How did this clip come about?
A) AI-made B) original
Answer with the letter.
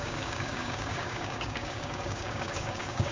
A